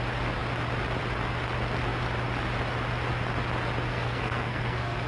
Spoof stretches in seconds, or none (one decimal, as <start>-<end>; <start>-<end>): 3.9-5.1